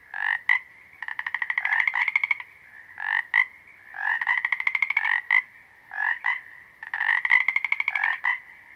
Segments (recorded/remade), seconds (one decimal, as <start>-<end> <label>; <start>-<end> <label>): 0.0-8.8 recorded